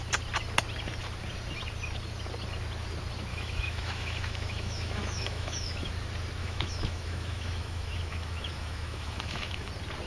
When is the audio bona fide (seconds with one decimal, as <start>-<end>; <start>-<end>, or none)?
0.0-3.3; 5.9-6.4; 9.7-10.1